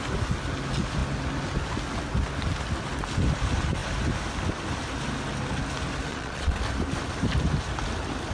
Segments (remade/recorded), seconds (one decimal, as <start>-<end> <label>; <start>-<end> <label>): 0.0-6.1 recorded; 6.1-6.6 remade; 6.6-8.3 recorded